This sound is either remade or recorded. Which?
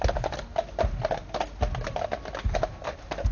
recorded